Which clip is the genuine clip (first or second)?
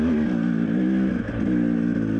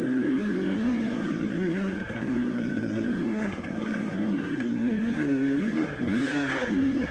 first